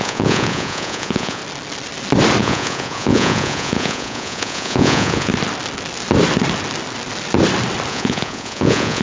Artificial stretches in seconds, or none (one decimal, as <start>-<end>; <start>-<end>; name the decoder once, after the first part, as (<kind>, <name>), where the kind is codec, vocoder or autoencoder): 0.0-1.4 (vocoder, Vocos); 2.4-5.3; 7.9-9.0